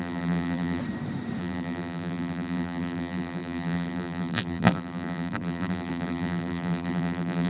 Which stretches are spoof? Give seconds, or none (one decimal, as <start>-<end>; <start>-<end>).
0.0-0.8; 1.4-7.5